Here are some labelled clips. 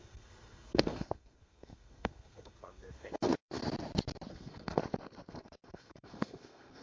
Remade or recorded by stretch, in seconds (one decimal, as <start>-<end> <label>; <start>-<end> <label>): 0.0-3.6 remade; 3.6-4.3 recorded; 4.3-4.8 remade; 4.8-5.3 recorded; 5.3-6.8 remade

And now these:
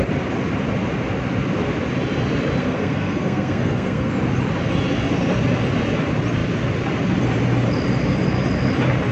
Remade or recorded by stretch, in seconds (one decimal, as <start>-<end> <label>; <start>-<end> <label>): 0.0-2.6 recorded; 2.6-4.1 remade; 4.1-9.1 recorded

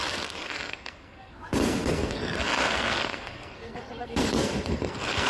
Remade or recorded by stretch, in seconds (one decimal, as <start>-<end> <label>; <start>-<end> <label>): 0.0-5.3 remade

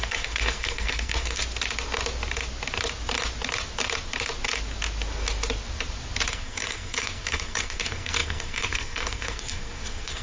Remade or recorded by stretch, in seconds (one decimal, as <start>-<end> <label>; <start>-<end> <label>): 0.0-1.4 remade; 1.4-6.3 recorded; 6.3-10.2 remade